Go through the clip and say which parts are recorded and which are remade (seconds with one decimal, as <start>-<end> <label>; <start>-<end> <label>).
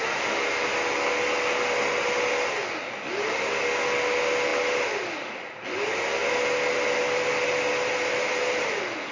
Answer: 0.0-9.1 recorded